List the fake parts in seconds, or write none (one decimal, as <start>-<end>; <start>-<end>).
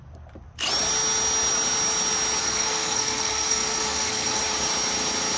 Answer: 2.4-4.4